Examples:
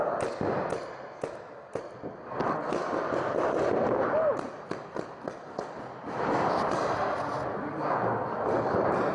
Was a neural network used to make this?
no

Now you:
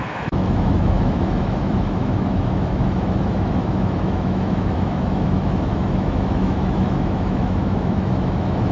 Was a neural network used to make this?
yes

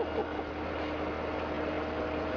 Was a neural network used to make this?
no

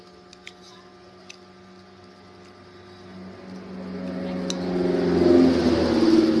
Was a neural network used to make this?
no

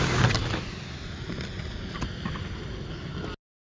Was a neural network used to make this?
no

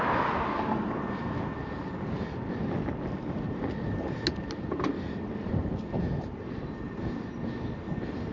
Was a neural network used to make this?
no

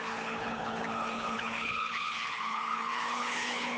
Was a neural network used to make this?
yes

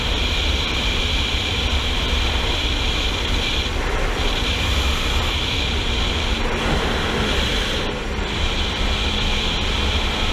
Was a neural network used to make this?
yes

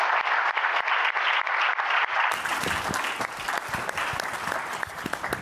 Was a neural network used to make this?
no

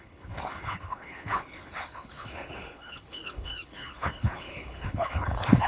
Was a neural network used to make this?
yes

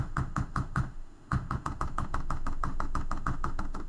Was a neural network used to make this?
yes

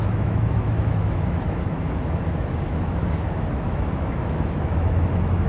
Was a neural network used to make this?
yes